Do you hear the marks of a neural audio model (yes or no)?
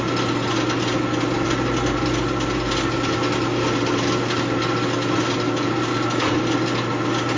no